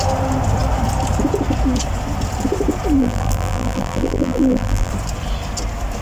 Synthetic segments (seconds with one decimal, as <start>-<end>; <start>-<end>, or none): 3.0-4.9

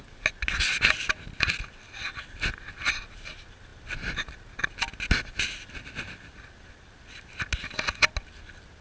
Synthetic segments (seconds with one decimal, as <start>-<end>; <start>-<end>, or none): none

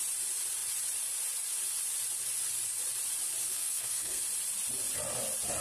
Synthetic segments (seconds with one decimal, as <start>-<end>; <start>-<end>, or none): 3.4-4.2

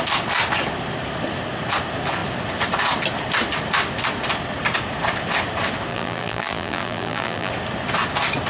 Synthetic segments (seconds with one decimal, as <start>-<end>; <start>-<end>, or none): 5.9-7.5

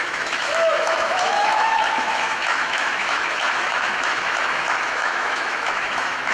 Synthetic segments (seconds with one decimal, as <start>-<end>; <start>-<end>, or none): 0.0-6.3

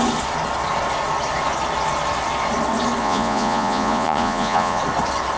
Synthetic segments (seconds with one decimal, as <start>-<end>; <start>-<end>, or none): 3.0-4.8

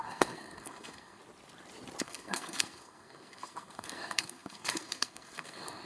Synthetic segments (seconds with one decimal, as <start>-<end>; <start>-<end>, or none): 0.0-1.2; 2.0-5.9